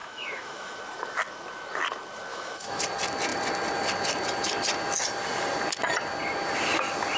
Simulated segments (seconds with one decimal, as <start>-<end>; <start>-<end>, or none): 0.0-0.8; 2.3-2.8